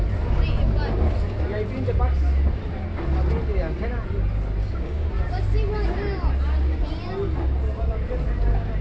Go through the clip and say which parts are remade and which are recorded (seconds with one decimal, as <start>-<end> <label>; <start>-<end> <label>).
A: 0.0-4.6 recorded; 4.6-5.1 remade; 5.1-8.8 recorded